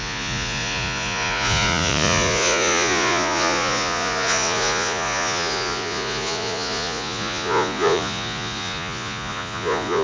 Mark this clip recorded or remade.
remade